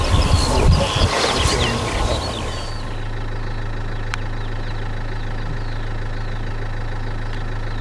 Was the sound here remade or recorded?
recorded